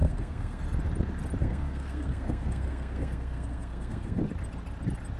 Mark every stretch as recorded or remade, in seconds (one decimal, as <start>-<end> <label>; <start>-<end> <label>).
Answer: 0.0-0.6 remade; 0.6-1.4 recorded; 1.4-4.2 remade; 4.2-5.2 recorded